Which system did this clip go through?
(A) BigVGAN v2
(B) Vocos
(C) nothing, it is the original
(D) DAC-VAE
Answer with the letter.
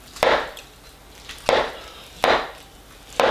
C